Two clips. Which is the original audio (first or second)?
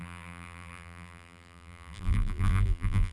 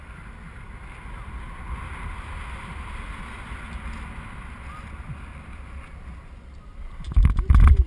second